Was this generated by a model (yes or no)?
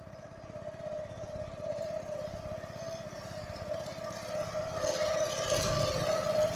no